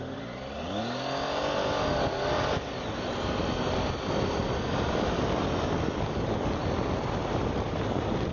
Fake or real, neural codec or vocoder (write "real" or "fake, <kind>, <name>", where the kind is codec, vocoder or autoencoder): real